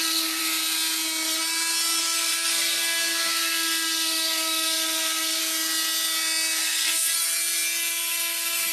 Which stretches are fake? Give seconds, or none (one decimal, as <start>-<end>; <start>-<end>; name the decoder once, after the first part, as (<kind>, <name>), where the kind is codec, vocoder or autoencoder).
0.0-0.4 (codec, SNAC); 2.0-5.4; 6.6-7.2; 8.1-8.7